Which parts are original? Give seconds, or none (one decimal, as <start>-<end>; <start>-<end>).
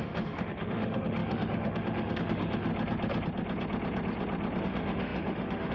2.7-4.6